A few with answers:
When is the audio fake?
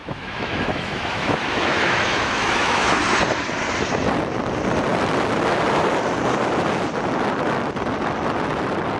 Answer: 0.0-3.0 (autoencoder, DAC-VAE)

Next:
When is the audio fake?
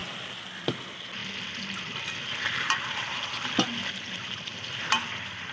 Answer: none